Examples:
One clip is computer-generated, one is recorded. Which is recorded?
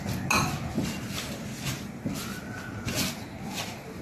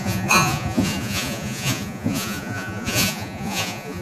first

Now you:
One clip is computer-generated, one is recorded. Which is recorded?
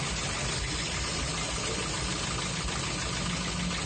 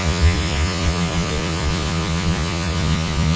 first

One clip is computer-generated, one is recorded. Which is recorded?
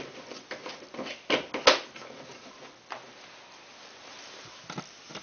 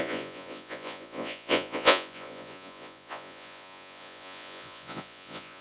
first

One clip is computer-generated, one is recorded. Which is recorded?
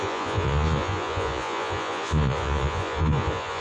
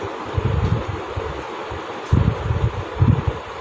second